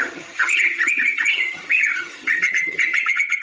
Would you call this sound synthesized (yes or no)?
yes